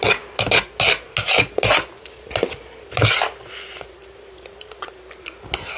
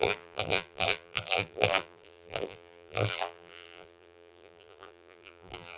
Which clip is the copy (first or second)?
second